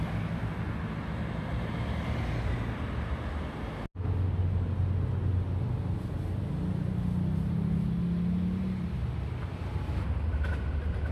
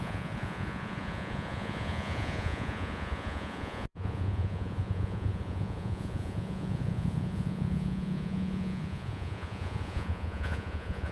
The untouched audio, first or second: first